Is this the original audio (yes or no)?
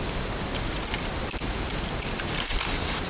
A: yes